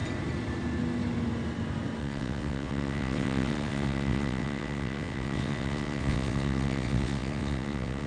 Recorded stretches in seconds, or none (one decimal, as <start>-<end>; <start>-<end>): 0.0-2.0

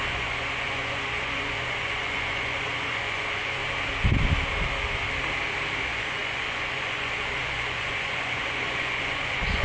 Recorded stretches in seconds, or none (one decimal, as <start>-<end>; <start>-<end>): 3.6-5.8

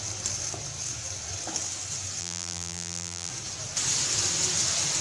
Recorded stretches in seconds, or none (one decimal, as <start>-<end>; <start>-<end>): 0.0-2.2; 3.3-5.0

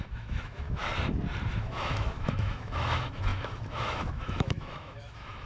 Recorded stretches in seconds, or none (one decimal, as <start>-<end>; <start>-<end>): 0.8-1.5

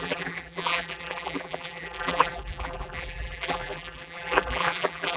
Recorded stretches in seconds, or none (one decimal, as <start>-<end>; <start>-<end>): none